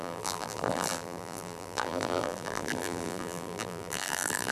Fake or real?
fake